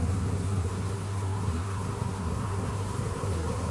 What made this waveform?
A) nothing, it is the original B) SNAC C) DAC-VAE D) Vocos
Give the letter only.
B